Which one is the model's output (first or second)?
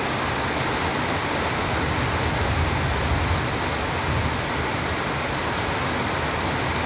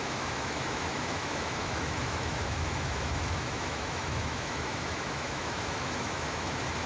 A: second